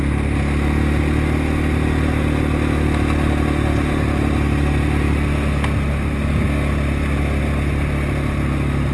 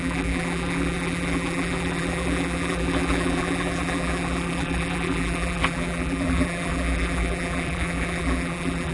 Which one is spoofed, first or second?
second